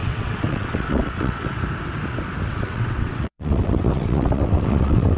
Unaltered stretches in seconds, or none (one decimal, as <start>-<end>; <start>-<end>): 1.5-2.5